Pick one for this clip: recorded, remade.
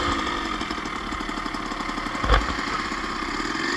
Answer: recorded